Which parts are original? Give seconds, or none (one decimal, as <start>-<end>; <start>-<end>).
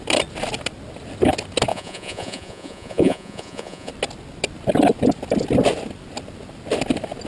0.0-1.7; 3.9-7.3